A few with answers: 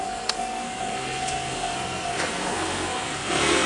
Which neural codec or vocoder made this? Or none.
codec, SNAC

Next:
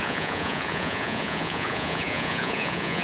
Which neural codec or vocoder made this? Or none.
vocoder, Vocos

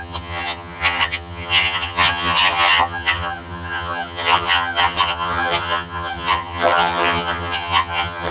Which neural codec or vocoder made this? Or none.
vocoder, HiFi-GAN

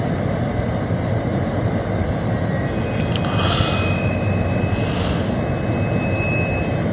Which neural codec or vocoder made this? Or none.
none